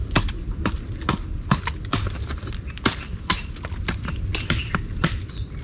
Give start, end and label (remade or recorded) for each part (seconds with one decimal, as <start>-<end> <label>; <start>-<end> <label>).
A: 0.0-0.7 remade; 0.7-4.3 recorded; 4.3-5.6 remade